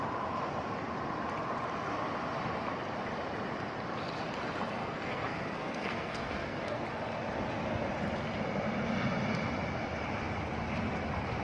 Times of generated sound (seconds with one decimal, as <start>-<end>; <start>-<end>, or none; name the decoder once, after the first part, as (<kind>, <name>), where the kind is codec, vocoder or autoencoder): 4.8-6.8 (codec, SNAC)